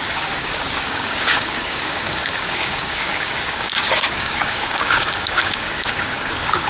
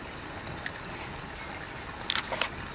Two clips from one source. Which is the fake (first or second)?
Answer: first